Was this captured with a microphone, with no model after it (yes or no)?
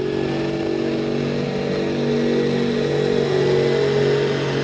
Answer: yes